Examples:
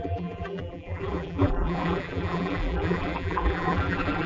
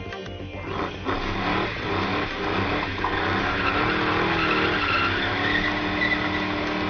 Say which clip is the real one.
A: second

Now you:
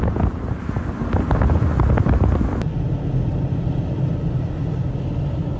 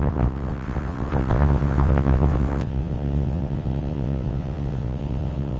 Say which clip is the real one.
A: first